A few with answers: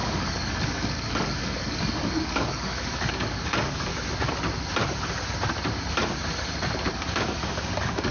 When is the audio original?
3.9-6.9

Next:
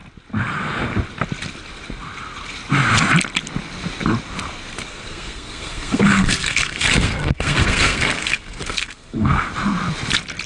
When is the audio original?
0.0-4.9; 9.5-10.5

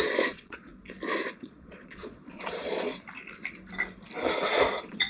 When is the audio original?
0.7-1.4; 2.9-4.5

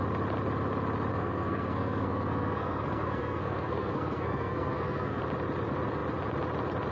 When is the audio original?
0.0-1.1; 5.2-6.9